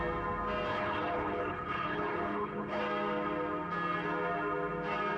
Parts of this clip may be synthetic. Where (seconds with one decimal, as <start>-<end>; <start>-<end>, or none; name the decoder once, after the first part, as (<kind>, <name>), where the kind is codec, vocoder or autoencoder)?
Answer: 0.7-2.8 (codec, HILCodec)